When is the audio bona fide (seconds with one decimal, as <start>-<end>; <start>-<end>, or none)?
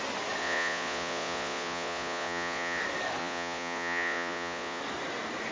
0.0-0.4; 2.8-3.2; 4.8-5.5